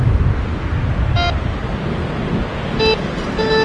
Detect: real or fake real